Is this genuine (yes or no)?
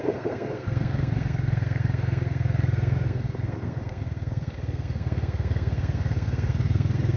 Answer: no